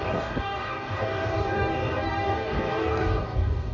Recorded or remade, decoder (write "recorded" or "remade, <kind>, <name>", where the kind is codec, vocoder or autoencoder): remade, codec, DAC